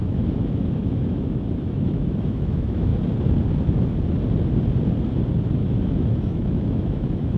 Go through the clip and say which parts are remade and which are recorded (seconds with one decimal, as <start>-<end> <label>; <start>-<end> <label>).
0.0-2.9 remade; 2.9-5.4 recorded; 5.4-7.4 remade